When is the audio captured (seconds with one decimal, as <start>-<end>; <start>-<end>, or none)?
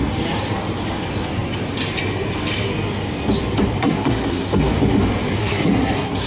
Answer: 0.0-3.8; 4.7-5.4